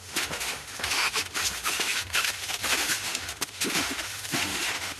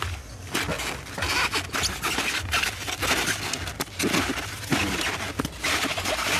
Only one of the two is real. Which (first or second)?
second